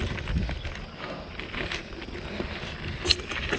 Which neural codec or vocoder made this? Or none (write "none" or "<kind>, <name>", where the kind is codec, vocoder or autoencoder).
none